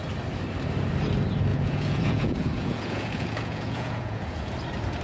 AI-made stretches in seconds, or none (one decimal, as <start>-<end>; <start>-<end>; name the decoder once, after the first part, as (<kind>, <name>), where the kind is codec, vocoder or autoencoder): 1.5-4.5 (vocoder, Vocos)